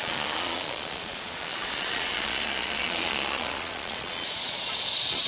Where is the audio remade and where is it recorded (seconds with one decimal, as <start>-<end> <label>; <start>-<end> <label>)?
0.0-5.3 remade